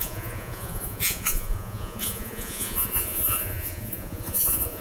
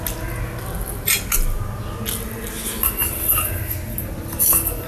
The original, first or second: second